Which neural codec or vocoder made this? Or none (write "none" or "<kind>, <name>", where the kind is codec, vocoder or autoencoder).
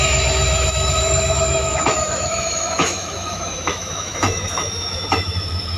autoencoder, DAC-VAE